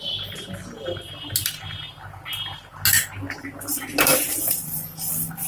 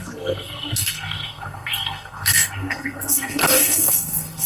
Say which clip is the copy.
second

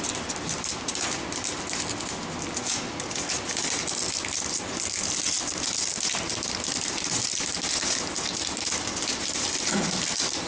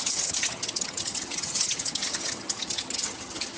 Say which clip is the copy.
second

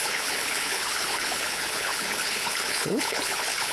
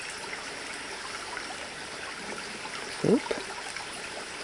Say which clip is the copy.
first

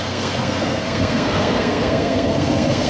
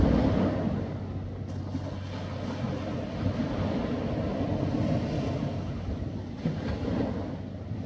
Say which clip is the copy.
first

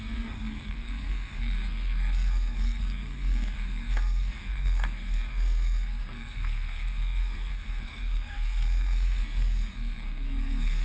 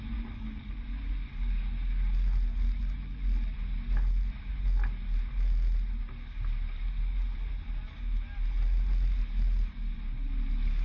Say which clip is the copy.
first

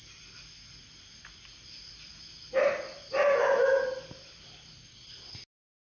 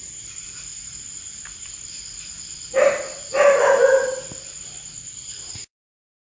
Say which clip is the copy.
second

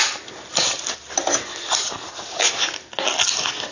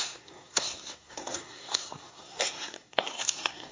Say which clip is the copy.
second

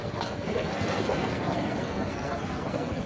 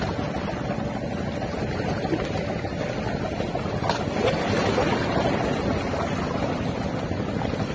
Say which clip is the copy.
first